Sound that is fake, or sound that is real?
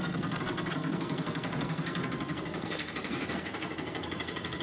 fake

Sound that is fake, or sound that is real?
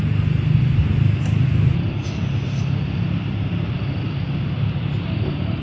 real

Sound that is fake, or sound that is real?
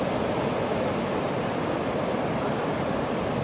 real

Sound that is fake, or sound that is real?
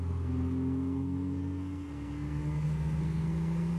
fake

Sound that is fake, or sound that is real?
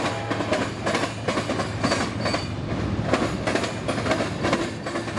real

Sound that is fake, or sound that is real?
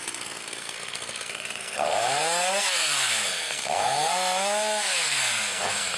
fake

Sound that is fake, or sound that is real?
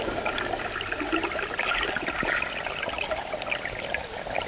real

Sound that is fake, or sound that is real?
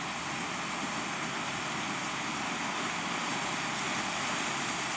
real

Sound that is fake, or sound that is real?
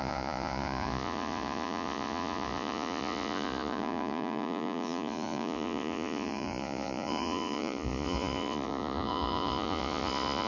fake